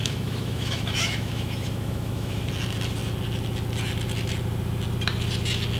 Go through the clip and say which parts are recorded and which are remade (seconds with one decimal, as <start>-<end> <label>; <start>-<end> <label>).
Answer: 0.0-2.5 remade; 2.5-5.8 recorded